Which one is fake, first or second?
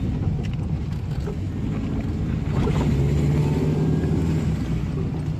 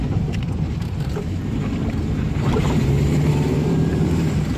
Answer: second